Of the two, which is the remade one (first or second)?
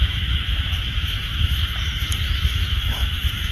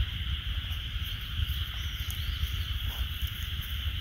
first